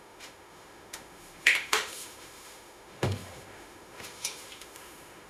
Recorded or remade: remade